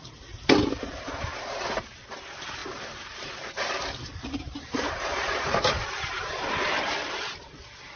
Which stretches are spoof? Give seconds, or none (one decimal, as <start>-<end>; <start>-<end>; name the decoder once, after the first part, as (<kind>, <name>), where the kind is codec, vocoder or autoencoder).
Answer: 2.6-3.3 (vocoder, BigVGAN v2); 4.0-7.6